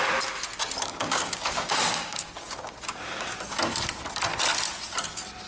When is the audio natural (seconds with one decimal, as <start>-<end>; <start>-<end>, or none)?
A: 0.0-0.9; 3.4-5.5